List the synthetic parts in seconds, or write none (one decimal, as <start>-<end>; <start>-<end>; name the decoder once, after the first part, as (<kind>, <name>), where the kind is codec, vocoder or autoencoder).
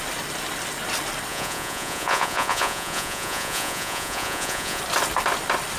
1.3-4.8 (vocoder, Vocos)